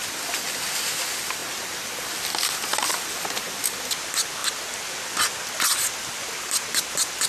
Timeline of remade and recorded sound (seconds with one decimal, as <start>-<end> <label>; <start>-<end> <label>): 0.0-7.3 recorded